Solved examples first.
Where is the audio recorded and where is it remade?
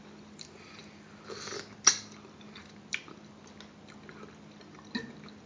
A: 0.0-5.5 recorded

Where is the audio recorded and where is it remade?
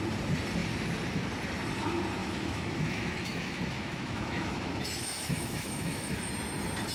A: 0.0-2.2 recorded; 2.2-6.3 remade; 6.3-6.9 recorded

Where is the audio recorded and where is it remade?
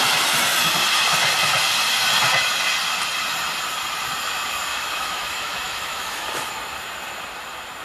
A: 0.0-4.7 recorded; 4.7-6.5 remade; 6.5-7.8 recorded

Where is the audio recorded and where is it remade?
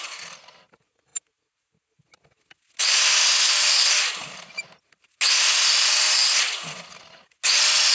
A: 0.0-7.9 recorded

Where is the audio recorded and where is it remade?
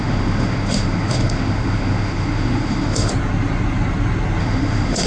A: 0.0-3.1 remade; 3.1-4.4 recorded; 4.4-5.1 remade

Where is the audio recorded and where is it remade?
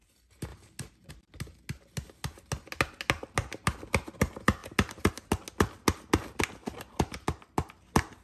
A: 0.0-8.2 recorded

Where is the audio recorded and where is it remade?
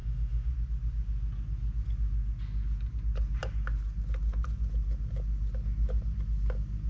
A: 0.0-0.5 remade; 0.5-6.9 recorded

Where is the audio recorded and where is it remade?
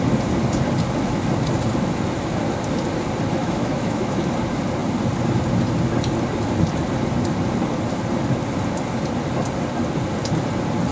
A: 0.0-3.4 recorded; 3.4-4.3 remade; 4.3-10.9 recorded